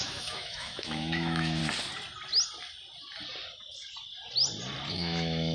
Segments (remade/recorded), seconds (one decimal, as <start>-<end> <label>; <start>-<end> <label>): 0.0-1.6 remade; 1.6-4.9 recorded; 4.9-5.5 remade